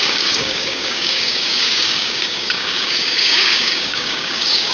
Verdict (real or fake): fake